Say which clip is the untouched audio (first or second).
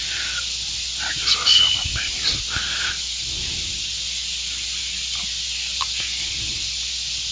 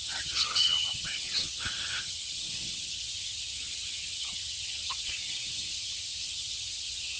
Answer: first